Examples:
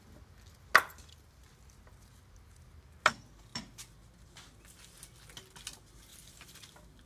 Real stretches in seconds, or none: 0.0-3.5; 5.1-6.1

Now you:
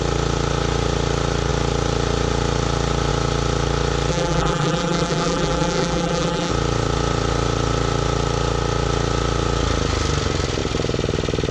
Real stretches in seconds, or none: 0.0-4.1; 6.5-11.5

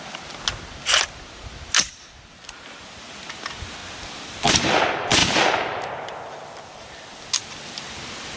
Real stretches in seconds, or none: 0.0-5.2; 6.0-8.4

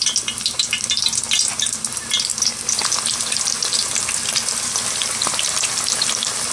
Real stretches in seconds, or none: 2.3-3.6

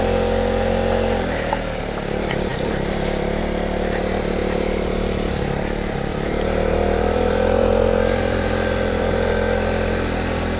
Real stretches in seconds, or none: 0.0-2.5; 3.4-6.1; 9.3-10.6

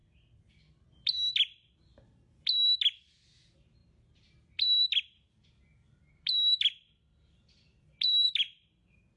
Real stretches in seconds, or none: 0.0-9.2

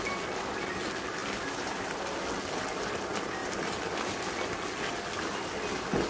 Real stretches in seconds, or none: 0.0-3.4; 4.4-6.1

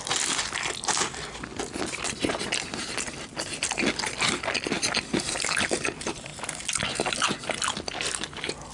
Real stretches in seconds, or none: 6.3-8.7